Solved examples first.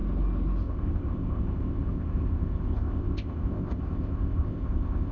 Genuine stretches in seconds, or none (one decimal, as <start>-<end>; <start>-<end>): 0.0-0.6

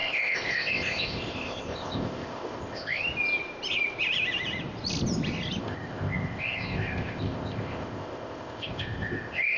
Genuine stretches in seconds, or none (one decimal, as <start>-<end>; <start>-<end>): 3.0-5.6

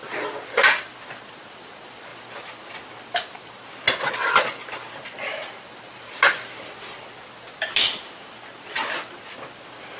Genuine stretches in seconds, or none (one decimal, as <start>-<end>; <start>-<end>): 0.0-10.0

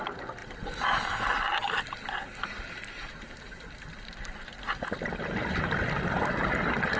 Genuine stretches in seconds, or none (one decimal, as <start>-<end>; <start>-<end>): 0.0-7.0